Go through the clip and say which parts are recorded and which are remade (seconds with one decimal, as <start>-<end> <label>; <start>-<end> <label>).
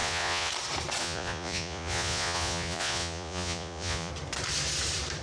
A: 0.0-0.5 remade; 0.5-1.0 recorded; 1.0-4.1 remade; 4.1-5.2 recorded